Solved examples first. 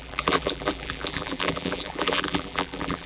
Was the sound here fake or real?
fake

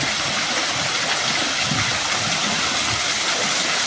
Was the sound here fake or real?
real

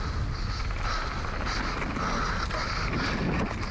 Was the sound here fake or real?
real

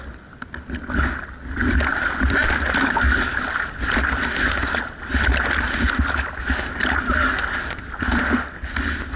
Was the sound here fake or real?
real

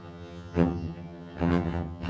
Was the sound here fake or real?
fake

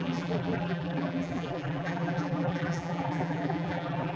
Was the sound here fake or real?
fake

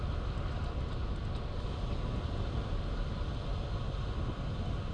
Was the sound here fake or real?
real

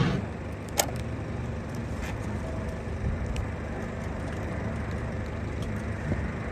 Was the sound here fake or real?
real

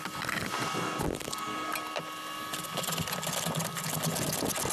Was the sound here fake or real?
real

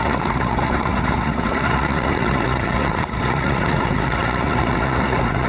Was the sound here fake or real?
fake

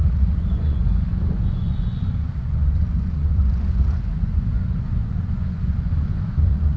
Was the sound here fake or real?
fake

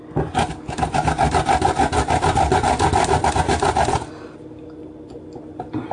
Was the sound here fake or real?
real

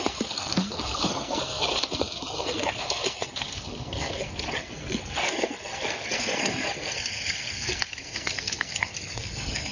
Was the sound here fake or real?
fake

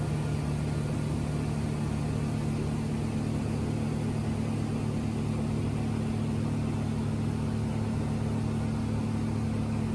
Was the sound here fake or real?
real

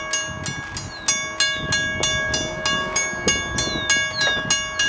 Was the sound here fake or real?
real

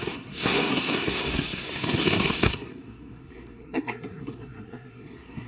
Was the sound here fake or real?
fake